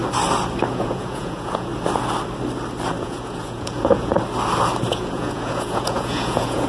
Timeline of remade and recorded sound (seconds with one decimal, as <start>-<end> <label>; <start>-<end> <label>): 0.0-0.7 recorded; 0.7-1.7 remade; 1.7-3.0 recorded; 3.0-4.1 remade; 4.1-4.9 recorded; 4.9-6.7 remade